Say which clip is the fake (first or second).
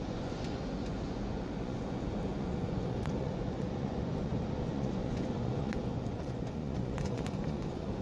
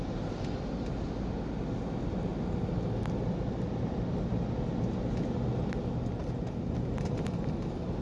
first